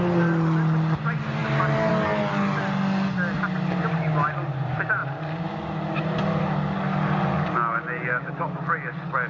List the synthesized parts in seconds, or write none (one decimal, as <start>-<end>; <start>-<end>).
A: none